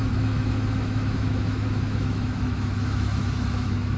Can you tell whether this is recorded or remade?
remade